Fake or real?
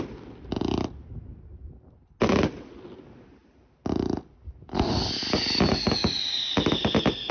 real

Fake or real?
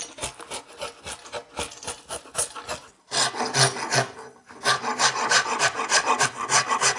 real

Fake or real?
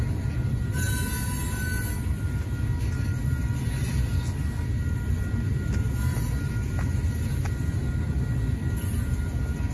real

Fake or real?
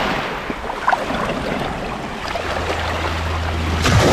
real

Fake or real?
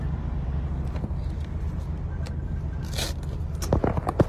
real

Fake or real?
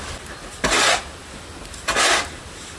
real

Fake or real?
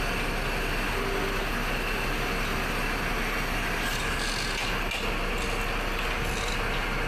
real